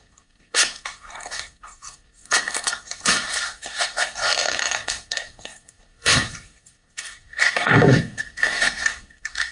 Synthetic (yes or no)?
yes